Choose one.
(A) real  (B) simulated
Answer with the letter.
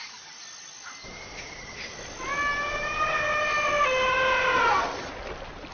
A